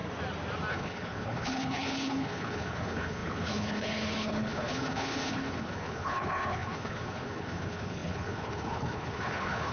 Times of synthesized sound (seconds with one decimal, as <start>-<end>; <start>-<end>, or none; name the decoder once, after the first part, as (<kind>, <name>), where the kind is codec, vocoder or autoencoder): 0.7-9.7 (codec, HILCodec)